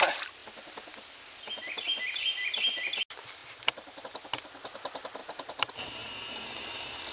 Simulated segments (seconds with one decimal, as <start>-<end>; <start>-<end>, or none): 3.4-4.0; 5.2-5.7

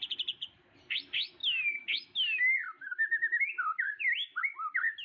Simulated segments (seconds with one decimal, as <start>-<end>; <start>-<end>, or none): none